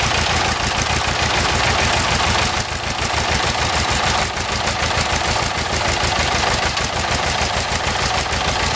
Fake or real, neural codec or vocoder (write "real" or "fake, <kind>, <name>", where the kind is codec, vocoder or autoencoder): real